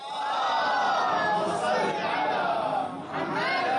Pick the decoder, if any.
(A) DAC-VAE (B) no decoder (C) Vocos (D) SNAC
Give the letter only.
B